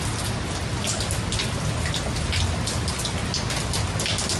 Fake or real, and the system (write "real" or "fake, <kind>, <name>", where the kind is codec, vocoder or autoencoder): real